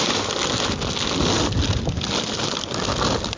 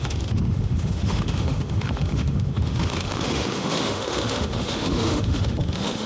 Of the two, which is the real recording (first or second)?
first